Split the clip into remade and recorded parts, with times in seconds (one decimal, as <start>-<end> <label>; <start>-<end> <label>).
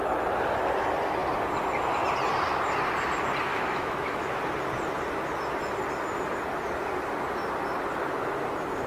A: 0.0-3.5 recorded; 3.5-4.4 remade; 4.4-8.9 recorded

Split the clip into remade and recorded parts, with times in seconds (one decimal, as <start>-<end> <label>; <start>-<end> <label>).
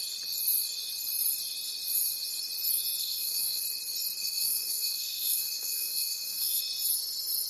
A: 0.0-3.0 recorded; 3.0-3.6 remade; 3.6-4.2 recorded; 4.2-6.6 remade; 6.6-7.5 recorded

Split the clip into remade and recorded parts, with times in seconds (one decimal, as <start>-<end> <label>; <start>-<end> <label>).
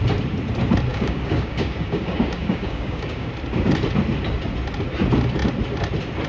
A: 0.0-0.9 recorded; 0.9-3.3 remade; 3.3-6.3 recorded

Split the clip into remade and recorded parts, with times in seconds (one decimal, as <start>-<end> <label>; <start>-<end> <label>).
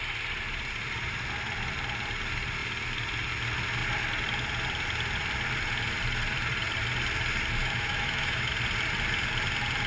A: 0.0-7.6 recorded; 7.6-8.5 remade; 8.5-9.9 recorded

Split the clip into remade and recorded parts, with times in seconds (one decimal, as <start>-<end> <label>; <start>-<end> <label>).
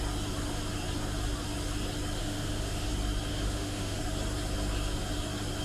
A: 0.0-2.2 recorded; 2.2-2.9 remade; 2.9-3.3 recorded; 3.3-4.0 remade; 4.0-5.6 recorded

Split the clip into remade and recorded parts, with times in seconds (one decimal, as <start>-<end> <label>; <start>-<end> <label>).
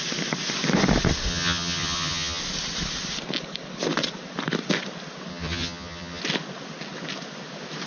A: 0.0-1.3 recorded; 1.3-2.4 remade; 2.4-5.3 recorded; 5.3-6.2 remade; 6.2-7.9 recorded